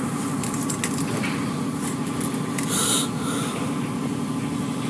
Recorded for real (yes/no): yes